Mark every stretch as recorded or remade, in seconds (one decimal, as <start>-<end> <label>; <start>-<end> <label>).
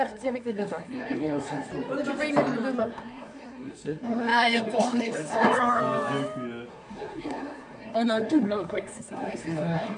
0.0-1.7 remade; 1.7-2.8 recorded; 2.8-5.8 remade; 5.8-6.7 recorded; 6.7-10.0 remade